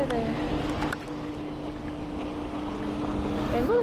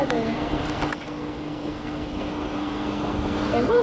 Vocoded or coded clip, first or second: second